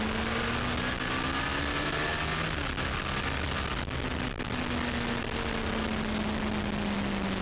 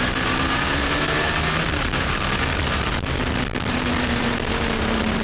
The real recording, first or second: first